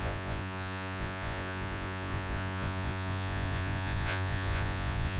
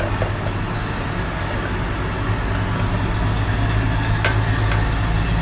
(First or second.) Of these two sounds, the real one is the second